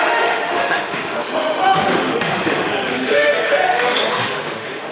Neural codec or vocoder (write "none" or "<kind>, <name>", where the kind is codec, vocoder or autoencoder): autoencoder, DAC-VAE